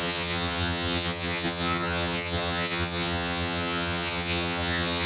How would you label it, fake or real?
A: fake